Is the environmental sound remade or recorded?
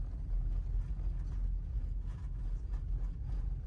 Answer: recorded